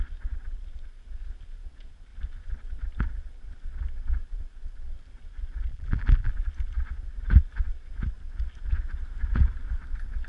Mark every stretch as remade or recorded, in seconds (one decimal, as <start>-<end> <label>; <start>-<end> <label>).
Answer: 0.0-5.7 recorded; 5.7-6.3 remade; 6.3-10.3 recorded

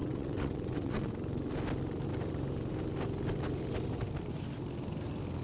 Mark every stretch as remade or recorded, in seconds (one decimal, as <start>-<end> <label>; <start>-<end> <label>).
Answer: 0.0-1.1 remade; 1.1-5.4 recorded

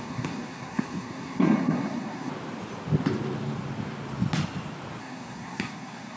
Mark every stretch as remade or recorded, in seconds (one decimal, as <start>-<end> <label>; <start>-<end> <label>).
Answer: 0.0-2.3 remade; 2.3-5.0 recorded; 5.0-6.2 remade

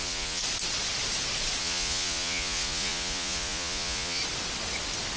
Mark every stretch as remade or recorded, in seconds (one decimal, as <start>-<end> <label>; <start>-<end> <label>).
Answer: 0.0-0.4 remade; 0.4-1.6 recorded; 1.6-4.2 remade; 4.2-5.2 recorded